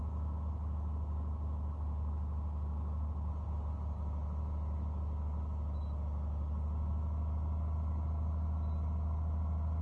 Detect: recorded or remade recorded